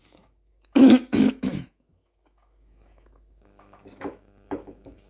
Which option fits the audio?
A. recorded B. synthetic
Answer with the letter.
B